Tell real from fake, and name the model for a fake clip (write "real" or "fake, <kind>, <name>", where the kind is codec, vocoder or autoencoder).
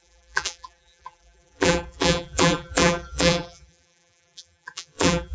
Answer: fake, vocoder, BigVGAN v2